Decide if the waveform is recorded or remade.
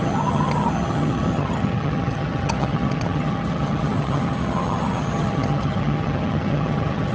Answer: remade